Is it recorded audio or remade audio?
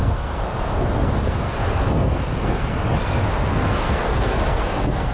remade